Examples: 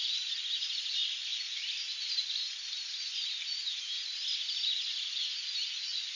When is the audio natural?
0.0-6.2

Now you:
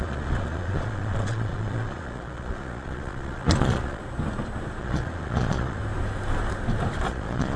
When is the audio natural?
4.0-4.8; 5.8-7.1

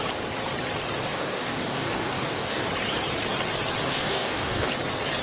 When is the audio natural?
0.0-1.1; 2.7-3.9; 4.7-5.2

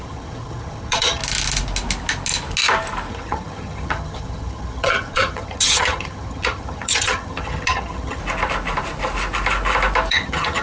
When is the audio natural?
1.2-3.1; 8.2-10.1